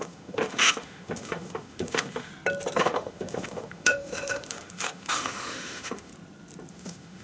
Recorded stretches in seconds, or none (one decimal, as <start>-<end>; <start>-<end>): 2.3-2.8; 6.1-6.7